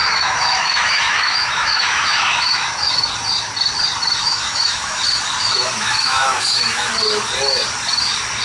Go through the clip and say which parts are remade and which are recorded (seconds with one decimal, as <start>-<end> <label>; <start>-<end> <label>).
0.0-3.1 remade; 3.1-4.2 recorded; 4.2-5.0 remade; 5.0-5.4 recorded; 5.4-6.9 remade; 6.9-8.4 recorded